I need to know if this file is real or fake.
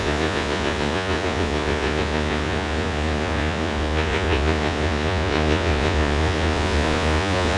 fake